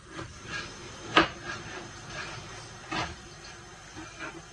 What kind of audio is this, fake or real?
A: real